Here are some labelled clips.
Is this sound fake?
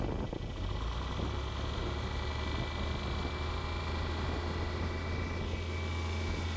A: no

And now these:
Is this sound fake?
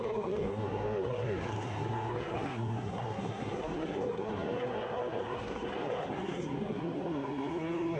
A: yes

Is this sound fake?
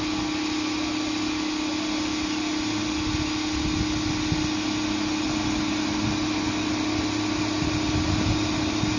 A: no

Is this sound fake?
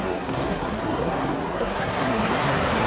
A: yes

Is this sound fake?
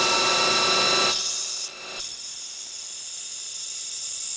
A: no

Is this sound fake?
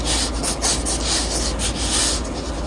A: no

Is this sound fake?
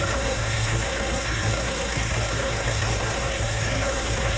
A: yes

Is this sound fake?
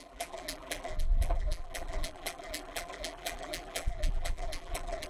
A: yes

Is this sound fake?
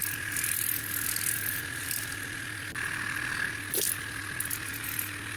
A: no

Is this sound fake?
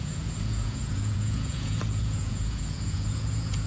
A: yes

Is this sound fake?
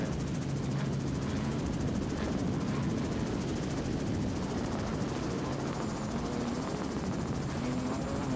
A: no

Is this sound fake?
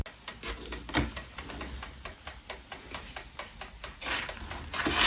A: no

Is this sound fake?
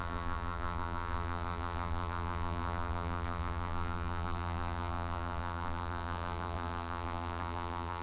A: yes